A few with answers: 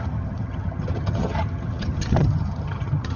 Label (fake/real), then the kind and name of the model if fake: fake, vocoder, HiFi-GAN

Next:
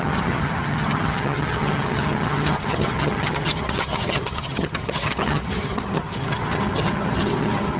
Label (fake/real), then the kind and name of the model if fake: fake, vocoder, HiFi-GAN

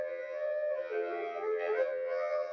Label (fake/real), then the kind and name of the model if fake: fake, vocoder, HiFi-GAN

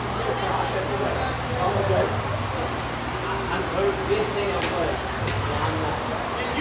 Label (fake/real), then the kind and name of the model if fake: real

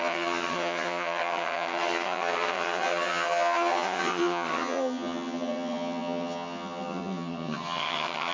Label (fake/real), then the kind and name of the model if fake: fake, vocoder, HiFi-GAN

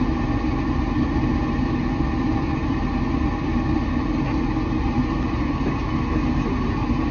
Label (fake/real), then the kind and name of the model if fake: real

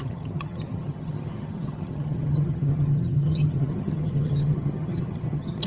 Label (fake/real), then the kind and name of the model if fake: fake, vocoder, HiFi-GAN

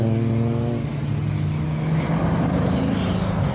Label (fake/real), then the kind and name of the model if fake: real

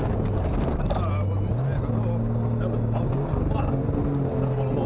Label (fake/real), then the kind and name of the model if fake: real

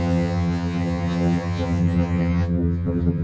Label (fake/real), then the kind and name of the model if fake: fake, vocoder, HiFi-GAN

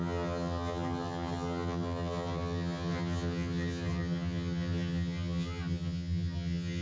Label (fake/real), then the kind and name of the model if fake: fake, vocoder, HiFi-GAN